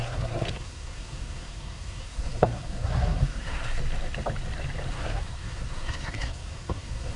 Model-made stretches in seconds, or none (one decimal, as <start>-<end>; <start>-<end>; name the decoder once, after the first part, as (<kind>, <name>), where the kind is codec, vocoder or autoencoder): 0.0-3.8 (codec, SNAC); 4.9-7.2